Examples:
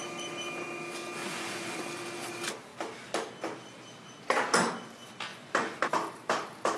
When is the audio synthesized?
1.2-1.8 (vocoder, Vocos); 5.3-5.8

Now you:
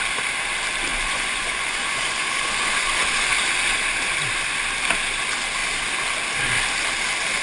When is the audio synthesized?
0.9-3.3 (vocoder, Vocos)

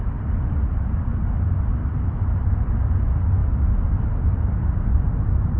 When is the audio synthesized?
1.1-3.0 (vocoder, BigVGAN v2)

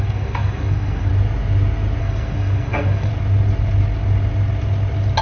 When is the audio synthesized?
0.0-1.1 (codec, SNAC); 2.0-3.1